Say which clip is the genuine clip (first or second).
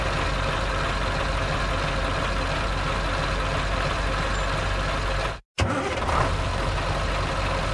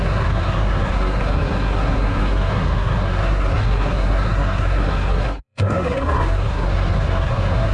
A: first